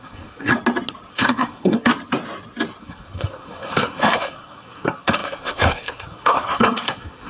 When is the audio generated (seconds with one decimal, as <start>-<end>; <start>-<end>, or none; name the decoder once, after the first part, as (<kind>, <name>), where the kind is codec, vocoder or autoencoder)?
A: 0.0-0.5 (codec, SNAC); 1.1-1.9; 2.8-7.3